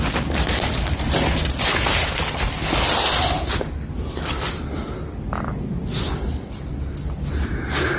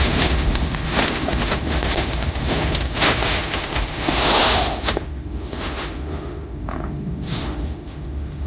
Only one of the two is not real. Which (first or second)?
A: second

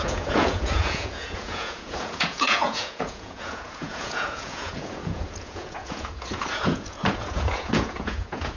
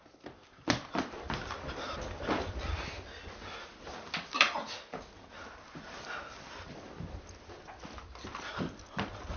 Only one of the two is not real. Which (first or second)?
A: first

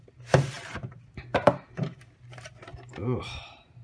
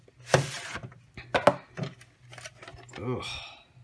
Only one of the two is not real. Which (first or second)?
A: first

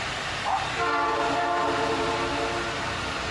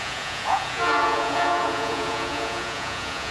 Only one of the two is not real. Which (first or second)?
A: second